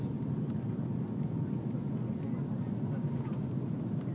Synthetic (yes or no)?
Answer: no